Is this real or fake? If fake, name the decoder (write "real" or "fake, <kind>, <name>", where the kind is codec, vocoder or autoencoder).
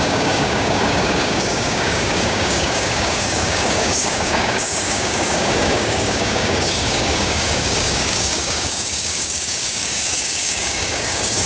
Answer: fake, codec, DAC